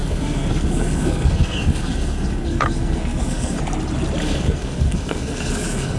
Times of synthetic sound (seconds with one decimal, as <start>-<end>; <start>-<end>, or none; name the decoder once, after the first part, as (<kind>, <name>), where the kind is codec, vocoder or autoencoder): 0.0-3.6 (codec, SNAC); 4.2-6.0